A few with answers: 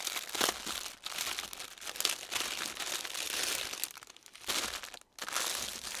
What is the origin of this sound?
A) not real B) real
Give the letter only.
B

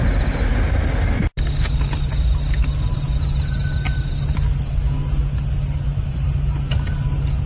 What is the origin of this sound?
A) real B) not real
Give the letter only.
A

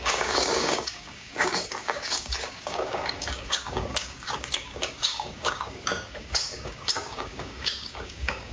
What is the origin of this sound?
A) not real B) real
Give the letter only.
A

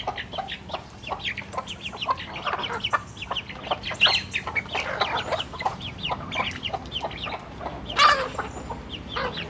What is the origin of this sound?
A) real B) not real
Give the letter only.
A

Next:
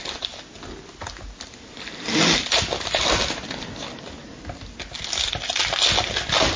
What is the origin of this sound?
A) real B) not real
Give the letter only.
A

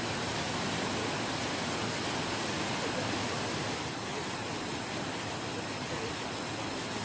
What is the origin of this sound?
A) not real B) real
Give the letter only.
B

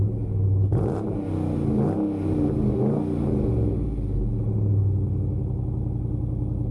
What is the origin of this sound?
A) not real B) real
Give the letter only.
B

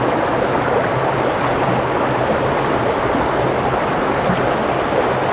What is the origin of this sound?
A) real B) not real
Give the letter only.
A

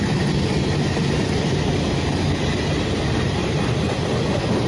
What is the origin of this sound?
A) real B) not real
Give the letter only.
A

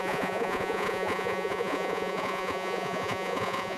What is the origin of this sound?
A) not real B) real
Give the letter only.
A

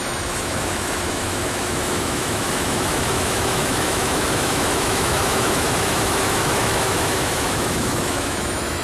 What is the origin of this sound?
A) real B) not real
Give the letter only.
B